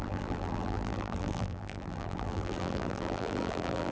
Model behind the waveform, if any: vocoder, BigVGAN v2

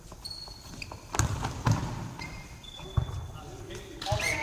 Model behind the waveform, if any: none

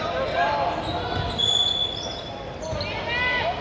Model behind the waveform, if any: none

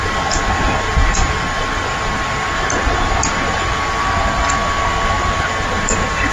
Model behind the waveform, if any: none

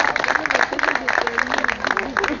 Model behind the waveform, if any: none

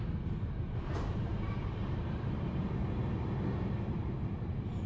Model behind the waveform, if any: vocoder, BigVGAN v2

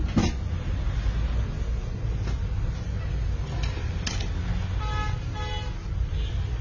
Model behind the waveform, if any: none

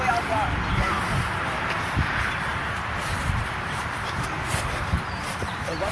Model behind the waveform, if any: vocoder, BigVGAN v2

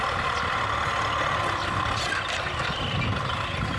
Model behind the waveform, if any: none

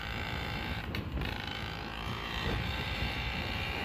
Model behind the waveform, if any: vocoder, BigVGAN v2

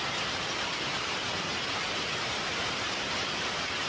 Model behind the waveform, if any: vocoder, BigVGAN v2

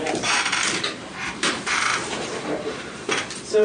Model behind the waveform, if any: vocoder, BigVGAN v2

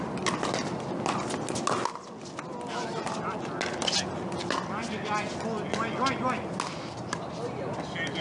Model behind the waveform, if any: none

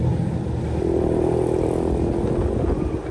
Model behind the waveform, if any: none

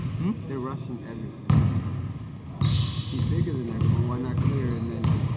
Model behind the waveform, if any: none